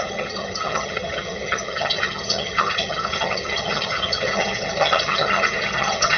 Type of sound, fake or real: fake